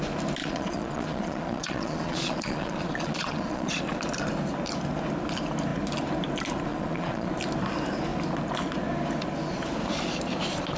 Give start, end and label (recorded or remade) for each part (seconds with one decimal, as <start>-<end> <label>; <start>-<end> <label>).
0.0-0.4 recorded; 0.4-3.8 remade; 3.8-6.7 recorded; 6.7-7.3 remade; 7.3-10.8 recorded